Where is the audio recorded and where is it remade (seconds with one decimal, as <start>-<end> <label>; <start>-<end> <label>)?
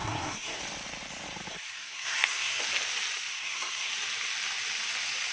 0.0-0.6 remade; 0.6-1.5 recorded; 1.5-2.6 remade; 2.6-3.3 recorded; 3.3-3.9 remade; 3.9-5.3 recorded